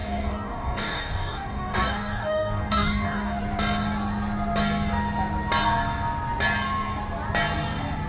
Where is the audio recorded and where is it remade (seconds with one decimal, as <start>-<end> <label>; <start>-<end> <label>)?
0.0-3.4 remade; 3.4-8.1 recorded